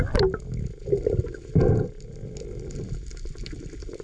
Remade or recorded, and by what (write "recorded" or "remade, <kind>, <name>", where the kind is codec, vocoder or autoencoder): recorded